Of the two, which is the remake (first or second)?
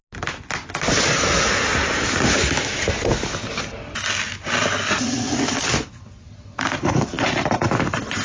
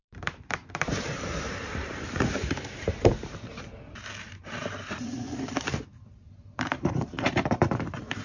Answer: second